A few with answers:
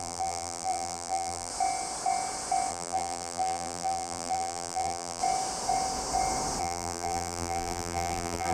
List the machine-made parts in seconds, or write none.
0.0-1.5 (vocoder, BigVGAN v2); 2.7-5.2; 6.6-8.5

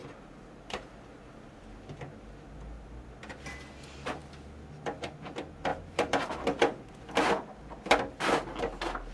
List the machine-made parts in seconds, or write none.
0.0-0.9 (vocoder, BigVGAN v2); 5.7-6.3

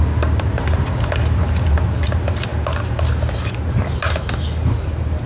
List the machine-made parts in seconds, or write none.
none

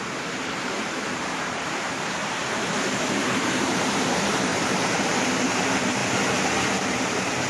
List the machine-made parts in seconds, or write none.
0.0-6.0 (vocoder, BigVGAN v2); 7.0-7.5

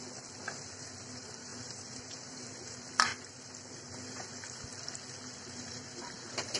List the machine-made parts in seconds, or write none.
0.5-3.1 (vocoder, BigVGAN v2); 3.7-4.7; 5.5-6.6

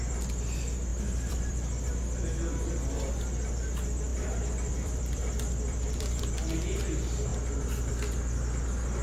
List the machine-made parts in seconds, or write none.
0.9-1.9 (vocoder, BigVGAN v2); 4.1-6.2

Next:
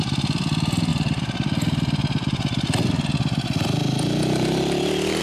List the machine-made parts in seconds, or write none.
0.0-0.9 (vocoder, BigVGAN v2); 2.8-3.8